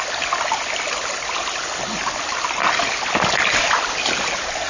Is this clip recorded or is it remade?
recorded